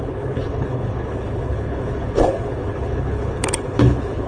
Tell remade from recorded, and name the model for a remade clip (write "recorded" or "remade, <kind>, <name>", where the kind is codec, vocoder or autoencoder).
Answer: remade, codec, HILCodec